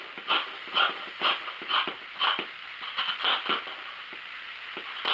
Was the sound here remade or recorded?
recorded